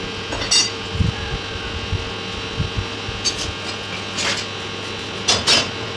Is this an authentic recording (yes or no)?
yes